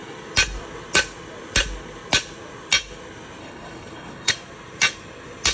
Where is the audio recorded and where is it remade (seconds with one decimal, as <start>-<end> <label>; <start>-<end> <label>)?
0.0-3.4 recorded; 3.4-4.3 remade; 4.3-5.5 recorded